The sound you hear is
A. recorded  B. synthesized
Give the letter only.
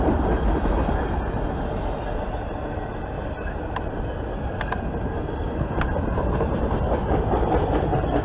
A